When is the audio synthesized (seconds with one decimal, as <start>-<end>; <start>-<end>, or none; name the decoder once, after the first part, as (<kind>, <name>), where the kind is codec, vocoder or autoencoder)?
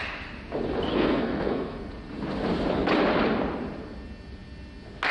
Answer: 0.9-1.9 (codec, SNAC)